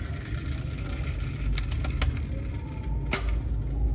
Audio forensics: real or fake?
real